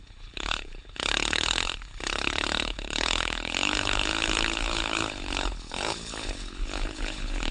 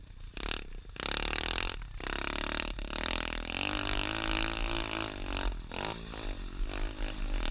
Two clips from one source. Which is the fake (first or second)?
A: first